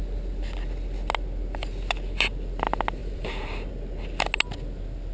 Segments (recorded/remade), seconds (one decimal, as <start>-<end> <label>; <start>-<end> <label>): 0.0-3.0 recorded; 3.0-3.7 remade; 3.7-5.1 recorded